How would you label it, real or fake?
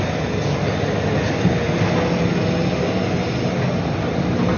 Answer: real